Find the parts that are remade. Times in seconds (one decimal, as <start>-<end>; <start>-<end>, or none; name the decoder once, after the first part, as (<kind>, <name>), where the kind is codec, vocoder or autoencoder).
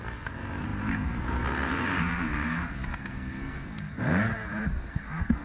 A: 0.0-4.3 (codec, SNAC); 4.9-5.4